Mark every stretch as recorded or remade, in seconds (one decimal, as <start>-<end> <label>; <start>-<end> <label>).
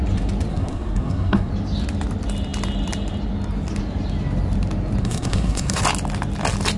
0.0-0.5 recorded; 0.5-1.5 remade; 1.5-5.0 recorded; 5.0-5.8 remade; 5.8-6.8 recorded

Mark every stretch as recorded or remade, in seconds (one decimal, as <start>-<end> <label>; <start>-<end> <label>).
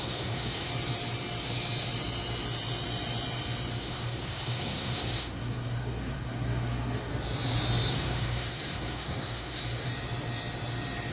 0.0-0.7 remade; 0.7-3.8 recorded; 3.8-7.1 remade; 7.1-7.9 recorded; 7.9-9.9 remade; 9.9-11.1 recorded